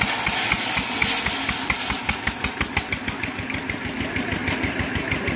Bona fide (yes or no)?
yes